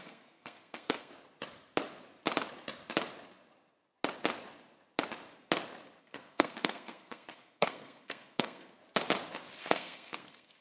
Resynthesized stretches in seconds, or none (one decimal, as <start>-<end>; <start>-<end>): 0.0-1.1; 6.0-8.8; 9.6-10.6